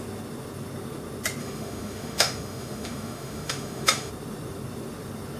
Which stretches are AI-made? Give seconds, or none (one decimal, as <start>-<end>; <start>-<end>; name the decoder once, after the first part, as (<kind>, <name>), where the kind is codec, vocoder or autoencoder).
1.4-4.1 (autoencoder, DAC-VAE)